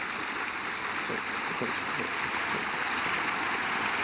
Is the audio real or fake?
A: real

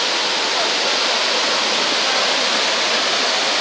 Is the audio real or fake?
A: real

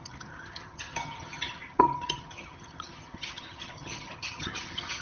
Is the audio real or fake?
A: fake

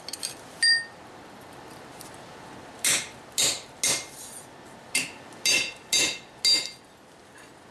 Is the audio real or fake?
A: real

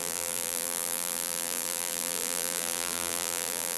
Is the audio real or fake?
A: fake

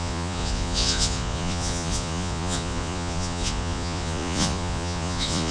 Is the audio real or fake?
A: fake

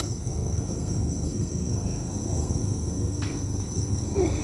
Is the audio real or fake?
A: fake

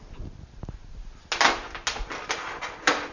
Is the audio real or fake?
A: real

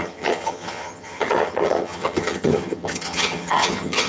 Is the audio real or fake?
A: fake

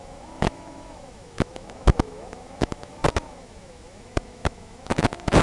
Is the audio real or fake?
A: fake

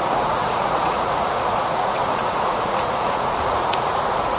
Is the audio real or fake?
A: fake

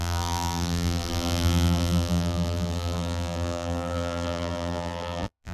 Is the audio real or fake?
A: fake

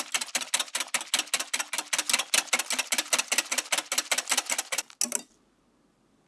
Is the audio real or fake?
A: real